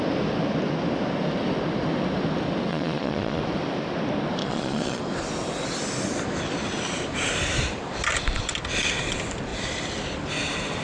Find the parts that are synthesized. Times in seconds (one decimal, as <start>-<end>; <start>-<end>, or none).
2.7-3.4; 4.4-5.0